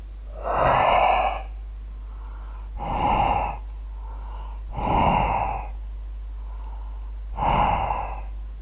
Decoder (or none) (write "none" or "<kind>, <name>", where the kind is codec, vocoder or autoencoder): none